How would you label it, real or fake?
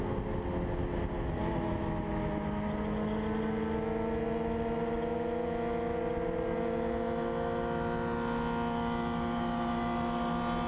real